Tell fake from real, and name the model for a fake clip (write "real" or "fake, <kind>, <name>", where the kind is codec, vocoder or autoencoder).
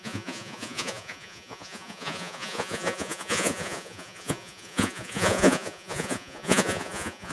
fake, vocoder, Vocos